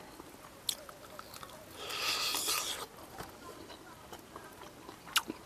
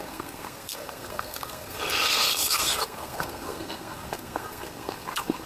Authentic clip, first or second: first